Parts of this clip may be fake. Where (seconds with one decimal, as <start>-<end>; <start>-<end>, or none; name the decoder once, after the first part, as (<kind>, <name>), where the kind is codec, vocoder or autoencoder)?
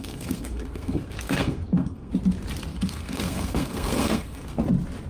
0.0-2.1 (codec, SNAC); 2.7-4.6